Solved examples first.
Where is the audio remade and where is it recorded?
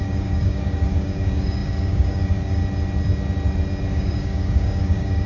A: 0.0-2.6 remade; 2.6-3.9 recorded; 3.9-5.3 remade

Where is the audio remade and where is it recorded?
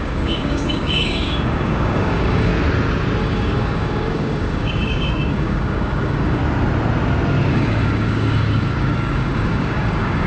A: 0.0-2.5 remade; 2.5-3.2 recorded; 3.2-6.4 remade; 6.4-7.5 recorded; 7.5-10.3 remade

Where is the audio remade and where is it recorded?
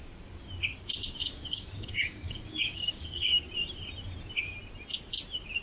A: 0.0-1.2 recorded; 1.2-3.4 remade; 3.4-5.6 recorded